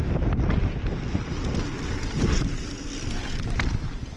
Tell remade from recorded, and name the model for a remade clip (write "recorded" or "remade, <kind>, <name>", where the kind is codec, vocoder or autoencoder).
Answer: recorded